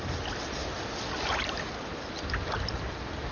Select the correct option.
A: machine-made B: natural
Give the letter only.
B